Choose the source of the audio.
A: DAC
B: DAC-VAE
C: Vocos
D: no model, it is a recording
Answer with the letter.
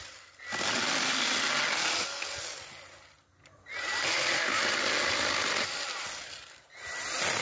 D